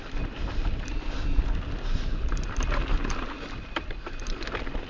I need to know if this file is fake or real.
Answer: real